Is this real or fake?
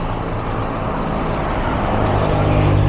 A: real